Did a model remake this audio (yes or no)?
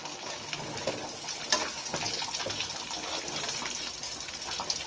no